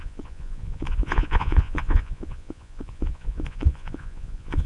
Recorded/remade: remade